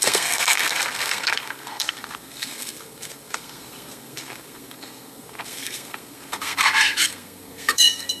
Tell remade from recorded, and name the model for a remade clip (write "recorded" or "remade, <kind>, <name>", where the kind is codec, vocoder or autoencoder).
remade, codec, SNAC